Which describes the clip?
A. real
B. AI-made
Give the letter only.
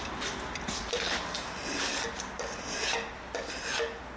A